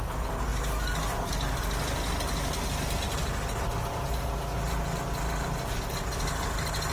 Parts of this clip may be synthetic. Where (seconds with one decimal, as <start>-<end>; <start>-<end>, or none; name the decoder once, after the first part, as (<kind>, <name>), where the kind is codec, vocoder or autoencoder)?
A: none